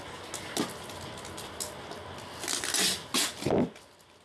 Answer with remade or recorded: recorded